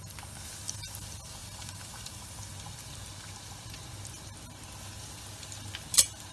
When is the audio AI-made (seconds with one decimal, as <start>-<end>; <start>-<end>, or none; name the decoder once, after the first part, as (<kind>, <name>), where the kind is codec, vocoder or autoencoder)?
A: 1.4-2.5 (vocoder, BigVGAN v2)